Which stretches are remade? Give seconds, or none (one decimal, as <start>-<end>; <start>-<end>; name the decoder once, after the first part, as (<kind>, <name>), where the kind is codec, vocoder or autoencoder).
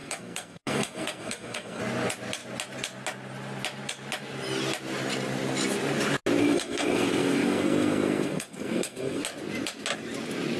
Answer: 0.0-1.8 (codec, SNAC); 6.4-9.2